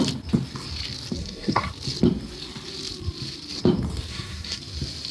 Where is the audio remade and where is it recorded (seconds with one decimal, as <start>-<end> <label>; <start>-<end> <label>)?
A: 0.0-1.2 recorded; 1.2-1.7 remade; 1.7-4.1 recorded; 4.1-4.6 remade; 4.6-5.1 recorded